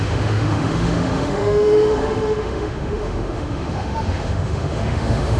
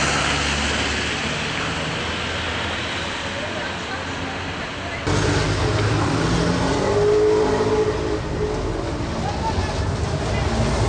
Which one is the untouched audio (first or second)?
second